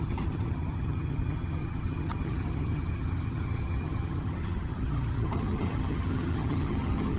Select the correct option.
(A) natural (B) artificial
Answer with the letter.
B